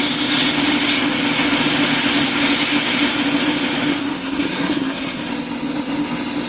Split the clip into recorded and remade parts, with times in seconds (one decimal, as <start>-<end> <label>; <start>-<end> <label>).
0.0-3.9 recorded; 3.9-5.3 remade; 5.3-6.5 recorded